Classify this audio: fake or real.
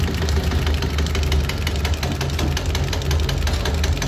real